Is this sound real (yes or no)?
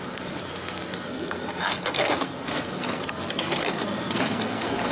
no